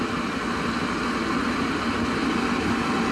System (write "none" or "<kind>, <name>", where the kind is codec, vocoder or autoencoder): none